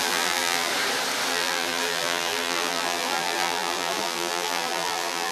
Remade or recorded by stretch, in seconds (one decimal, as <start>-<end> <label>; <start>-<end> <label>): 0.0-0.7 remade; 0.7-1.3 recorded; 1.3-5.3 remade